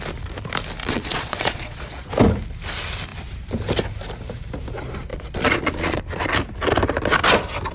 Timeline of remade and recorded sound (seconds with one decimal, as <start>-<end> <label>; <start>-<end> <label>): 0.0-0.8 recorded; 0.8-2.1 remade; 2.1-5.1 recorded; 5.1-6.0 remade; 6.0-7.7 recorded